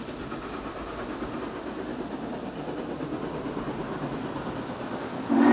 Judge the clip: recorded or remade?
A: recorded